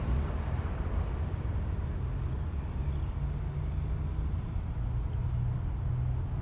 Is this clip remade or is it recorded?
recorded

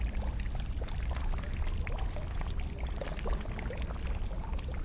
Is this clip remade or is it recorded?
recorded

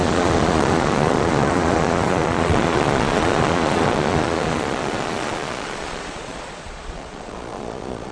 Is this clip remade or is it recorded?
remade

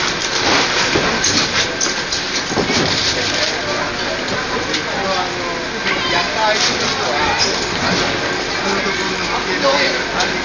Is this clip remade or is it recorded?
recorded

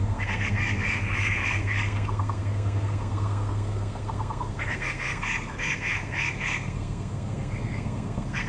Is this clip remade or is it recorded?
remade